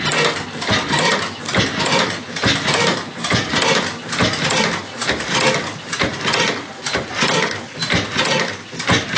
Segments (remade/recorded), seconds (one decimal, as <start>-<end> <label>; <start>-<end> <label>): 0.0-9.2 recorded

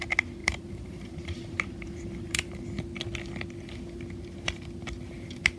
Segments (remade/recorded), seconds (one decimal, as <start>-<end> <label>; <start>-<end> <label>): 0.0-0.4 recorded; 0.4-2.6 remade; 2.6-5.6 recorded

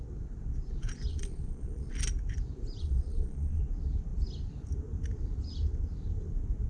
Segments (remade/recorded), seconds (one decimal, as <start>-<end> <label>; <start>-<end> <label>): 0.0-1.1 recorded; 1.1-1.9 remade; 1.9-2.8 recorded; 2.8-3.6 remade; 3.6-6.7 recorded

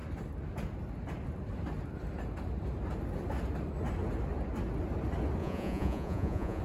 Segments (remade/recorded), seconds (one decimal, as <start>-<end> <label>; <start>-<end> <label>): 0.0-5.4 recorded; 5.4-6.6 remade